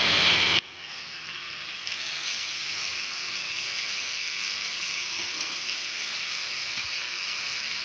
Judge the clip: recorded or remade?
remade